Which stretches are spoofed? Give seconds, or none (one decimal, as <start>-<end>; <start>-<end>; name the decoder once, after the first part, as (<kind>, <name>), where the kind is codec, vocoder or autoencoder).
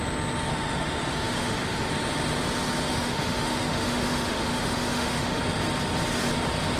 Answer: 0.5-1.9 (autoencoder, DAC-VAE); 2.9-5.4